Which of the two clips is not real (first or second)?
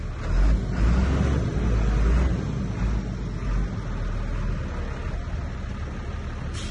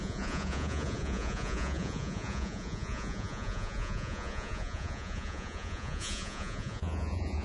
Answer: second